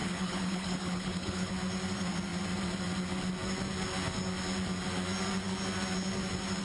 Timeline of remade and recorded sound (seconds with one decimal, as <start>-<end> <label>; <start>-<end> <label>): 0.0-1.5 remade; 1.5-6.6 recorded

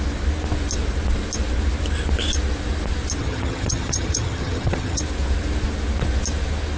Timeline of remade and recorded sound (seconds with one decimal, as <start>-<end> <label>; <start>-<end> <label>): 0.0-3.2 recorded; 3.2-5.0 remade; 5.0-6.8 recorded

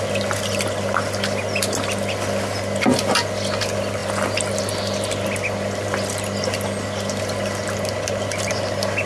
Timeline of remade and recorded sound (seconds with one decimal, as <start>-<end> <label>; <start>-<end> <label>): 0.0-9.1 recorded

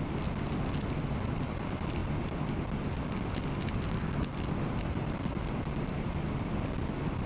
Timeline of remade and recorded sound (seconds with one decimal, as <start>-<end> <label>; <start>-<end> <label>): 0.0-7.3 recorded

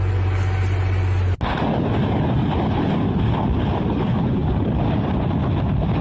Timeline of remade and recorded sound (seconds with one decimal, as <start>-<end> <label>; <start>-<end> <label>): 0.0-6.0 recorded

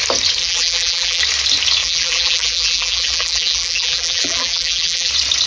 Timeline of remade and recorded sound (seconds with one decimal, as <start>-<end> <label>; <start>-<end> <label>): 0.0-0.4 recorded; 0.4-1.2 remade; 1.2-1.8 recorded; 1.8-5.1 remade; 5.1-5.5 recorded

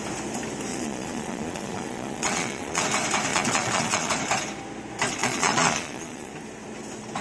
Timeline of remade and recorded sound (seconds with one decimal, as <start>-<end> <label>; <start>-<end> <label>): 0.0-0.7 recorded; 0.7-2.8 remade; 2.8-3.3 recorded; 3.3-4.1 remade; 4.1-5.2 recorded; 5.2-6.3 remade; 6.3-7.2 recorded